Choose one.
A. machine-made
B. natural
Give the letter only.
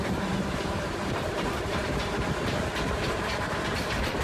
A